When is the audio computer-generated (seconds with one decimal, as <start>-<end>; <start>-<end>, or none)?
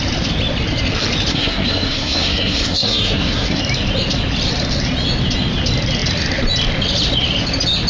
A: 1.3-3.6